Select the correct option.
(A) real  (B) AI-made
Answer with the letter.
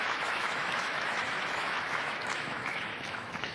B